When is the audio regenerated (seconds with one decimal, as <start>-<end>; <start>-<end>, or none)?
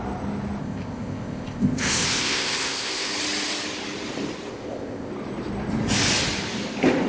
0.6-3.1; 4.5-5.1